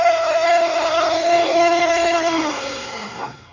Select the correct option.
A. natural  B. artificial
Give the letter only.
B